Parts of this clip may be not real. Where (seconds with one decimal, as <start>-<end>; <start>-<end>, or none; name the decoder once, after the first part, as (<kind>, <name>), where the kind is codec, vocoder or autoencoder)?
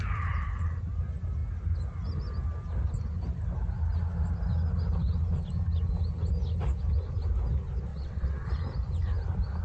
7.9-8.5 (vocoder, WaveNeXt)